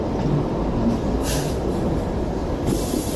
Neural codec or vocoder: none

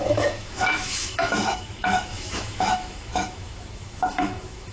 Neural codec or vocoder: autoencoder, DAC-VAE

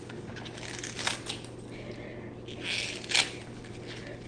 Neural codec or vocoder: none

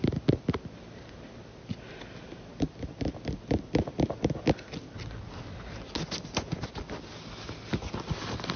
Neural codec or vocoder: none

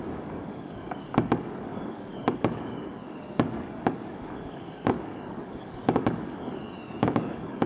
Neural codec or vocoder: codec, DAC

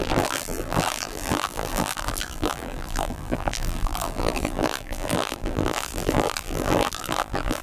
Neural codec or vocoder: vocoder, BigVGAN v2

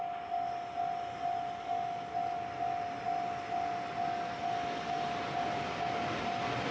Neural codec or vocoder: none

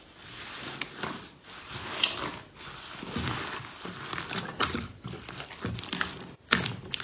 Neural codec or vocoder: none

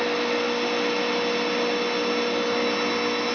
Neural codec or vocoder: none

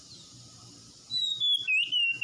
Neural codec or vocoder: none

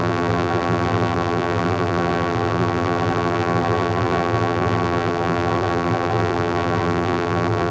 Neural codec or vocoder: vocoder, BigVGAN v2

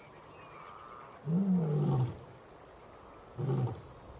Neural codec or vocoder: none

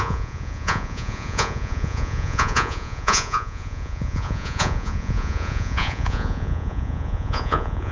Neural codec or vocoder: vocoder, Vocos